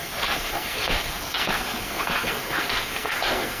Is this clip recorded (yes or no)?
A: no